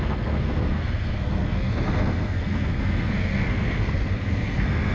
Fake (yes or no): yes